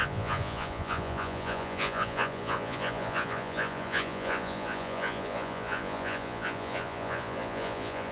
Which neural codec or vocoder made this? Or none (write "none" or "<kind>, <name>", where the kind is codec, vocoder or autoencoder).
vocoder, Vocos